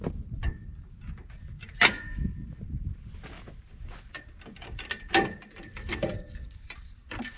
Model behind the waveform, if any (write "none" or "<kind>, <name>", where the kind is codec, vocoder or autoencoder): none